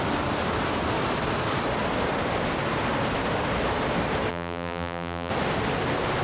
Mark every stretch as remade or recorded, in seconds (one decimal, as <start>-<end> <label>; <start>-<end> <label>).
0.0-4.3 recorded; 4.3-5.3 remade; 5.3-6.2 recorded